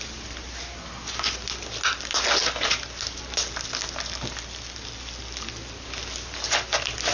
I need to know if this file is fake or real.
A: real